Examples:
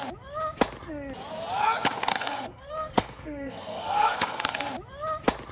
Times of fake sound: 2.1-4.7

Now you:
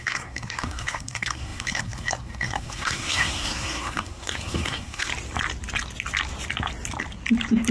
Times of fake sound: 0.0-5.1